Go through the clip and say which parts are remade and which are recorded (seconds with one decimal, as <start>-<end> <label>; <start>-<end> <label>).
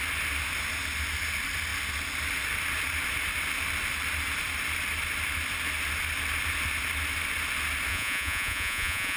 0.0-7.9 recorded; 7.9-9.2 remade